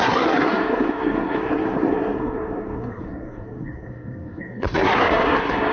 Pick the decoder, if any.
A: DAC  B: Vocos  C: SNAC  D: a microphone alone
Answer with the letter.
C